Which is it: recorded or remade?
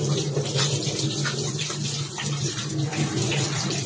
recorded